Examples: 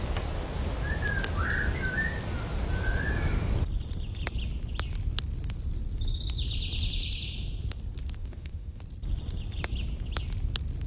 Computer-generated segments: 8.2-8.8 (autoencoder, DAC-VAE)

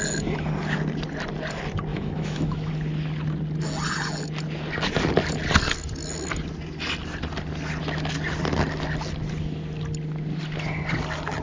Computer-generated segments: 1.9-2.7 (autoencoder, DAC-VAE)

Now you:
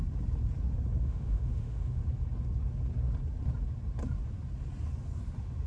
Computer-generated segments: 1.0-2.0 (autoencoder, DAC-VAE)

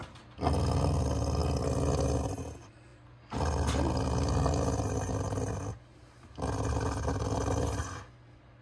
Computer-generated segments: none

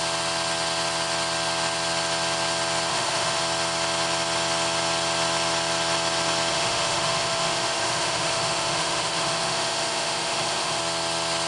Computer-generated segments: 2.9-3.4 (autoencoder, DAC-VAE); 6.5-10.8

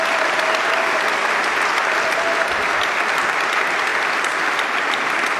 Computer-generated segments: none

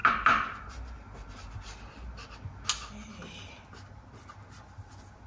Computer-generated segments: none